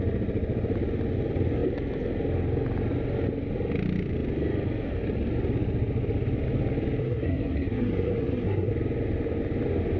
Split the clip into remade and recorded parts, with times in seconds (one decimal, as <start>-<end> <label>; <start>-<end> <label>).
0.0-7.0 recorded; 7.0-8.7 remade; 8.7-10.0 recorded